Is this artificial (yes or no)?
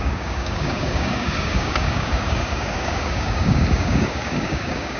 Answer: yes